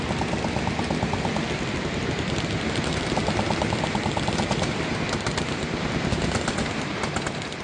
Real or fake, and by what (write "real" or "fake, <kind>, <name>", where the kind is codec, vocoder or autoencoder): real